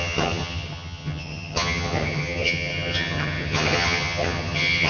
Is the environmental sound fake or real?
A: fake